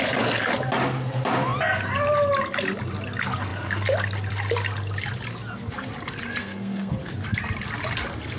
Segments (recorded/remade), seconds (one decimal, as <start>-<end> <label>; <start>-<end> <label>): 0.0-6.4 recorded; 6.4-6.9 remade; 6.9-8.4 recorded

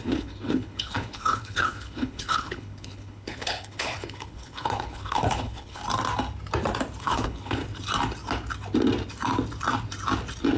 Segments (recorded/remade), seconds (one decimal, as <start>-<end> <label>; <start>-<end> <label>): 0.0-5.8 remade; 5.8-7.0 recorded; 7.0-7.6 remade; 7.6-10.6 recorded

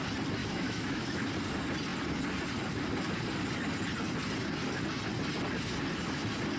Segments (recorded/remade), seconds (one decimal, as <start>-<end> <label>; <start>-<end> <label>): 0.0-0.4 recorded; 0.4-1.3 remade; 1.3-6.6 recorded

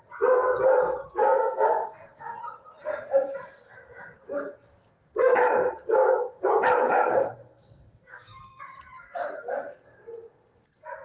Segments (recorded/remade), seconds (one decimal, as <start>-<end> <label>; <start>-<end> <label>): 0.0-1.2 recorded; 1.2-2.4 remade; 2.4-7.2 recorded; 7.2-8.6 remade; 8.6-11.0 recorded